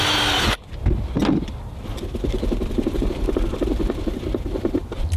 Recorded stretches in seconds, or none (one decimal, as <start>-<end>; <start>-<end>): 0.0-5.2